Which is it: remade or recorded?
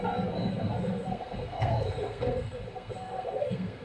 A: remade